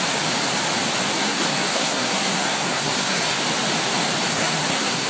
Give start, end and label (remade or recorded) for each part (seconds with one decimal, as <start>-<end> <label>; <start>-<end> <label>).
0.0-1.2 recorded; 1.2-3.4 remade; 3.4-4.3 recorded; 4.3-5.1 remade